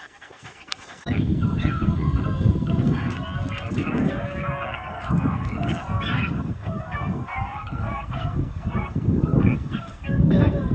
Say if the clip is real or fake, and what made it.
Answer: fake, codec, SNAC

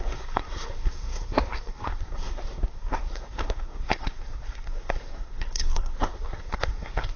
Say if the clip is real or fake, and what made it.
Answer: fake, codec, SNAC